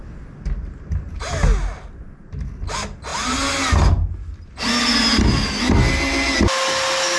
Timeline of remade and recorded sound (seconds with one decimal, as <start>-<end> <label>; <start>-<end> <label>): 0.0-7.2 recorded